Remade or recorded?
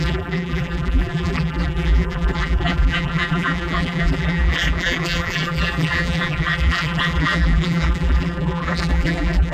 remade